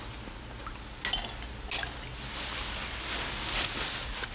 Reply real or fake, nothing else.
real